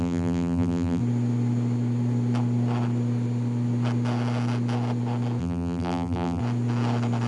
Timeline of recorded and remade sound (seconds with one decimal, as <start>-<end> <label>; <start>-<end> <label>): 0.0-1.0 remade; 1.0-5.4 recorded; 5.4-6.4 remade; 6.4-7.3 recorded